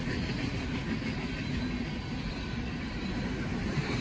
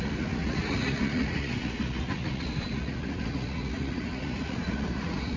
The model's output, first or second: second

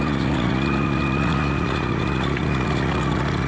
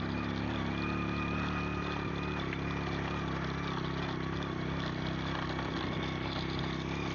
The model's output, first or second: first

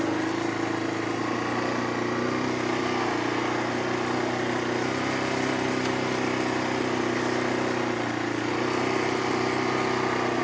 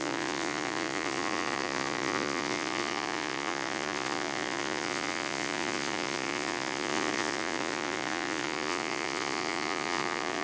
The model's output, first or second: second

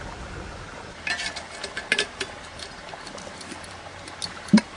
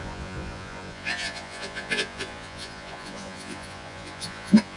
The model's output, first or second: second